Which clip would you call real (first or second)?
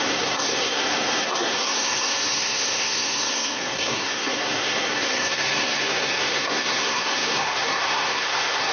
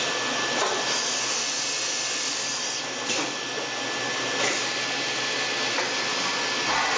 second